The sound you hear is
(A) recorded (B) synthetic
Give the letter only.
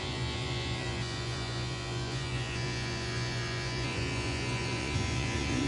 B